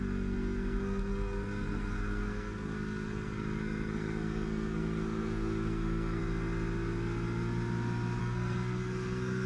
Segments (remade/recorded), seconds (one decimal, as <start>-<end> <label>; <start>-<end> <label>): 0.0-6.2 remade; 6.2-8.2 recorded; 8.2-9.5 remade